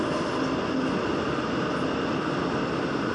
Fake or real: real